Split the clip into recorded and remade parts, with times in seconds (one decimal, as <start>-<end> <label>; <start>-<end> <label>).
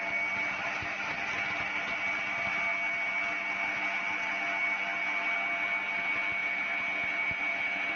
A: 0.0-6.4 recorded; 6.4-8.0 remade